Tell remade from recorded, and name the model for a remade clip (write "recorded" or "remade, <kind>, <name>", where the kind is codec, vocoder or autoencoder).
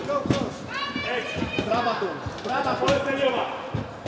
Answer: recorded